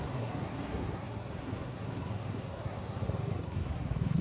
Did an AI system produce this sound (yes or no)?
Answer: yes